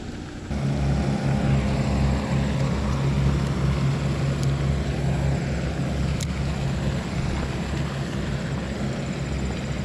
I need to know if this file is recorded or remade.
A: recorded